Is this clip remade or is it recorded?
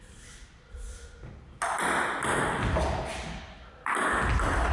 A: recorded